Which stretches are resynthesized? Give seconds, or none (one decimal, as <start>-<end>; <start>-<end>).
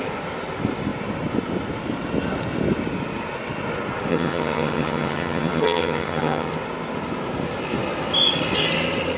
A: 4.1-6.5